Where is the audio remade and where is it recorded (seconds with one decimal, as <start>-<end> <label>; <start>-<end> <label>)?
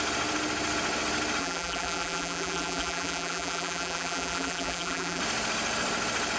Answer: 0.0-1.4 recorded; 1.4-5.2 remade; 5.2-6.4 recorded